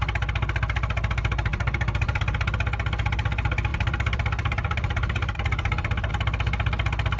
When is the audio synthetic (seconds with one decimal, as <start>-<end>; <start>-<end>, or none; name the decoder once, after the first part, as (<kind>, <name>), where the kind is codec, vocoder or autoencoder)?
1.5-2.2 (vocoder, BigVGAN v2); 3.7-6.1